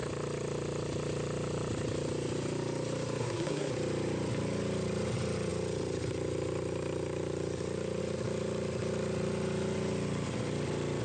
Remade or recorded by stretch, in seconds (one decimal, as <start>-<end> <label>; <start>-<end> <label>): 0.0-3.2 recorded; 3.2-3.7 remade; 3.7-11.0 recorded